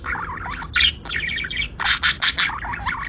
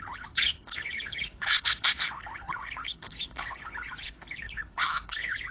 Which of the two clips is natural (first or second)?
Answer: first